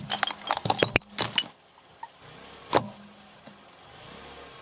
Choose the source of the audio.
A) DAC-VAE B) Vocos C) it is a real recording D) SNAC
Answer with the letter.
C